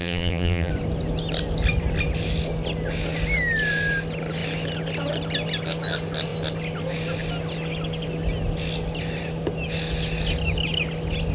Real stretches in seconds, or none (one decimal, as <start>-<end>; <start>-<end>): 0.7-11.3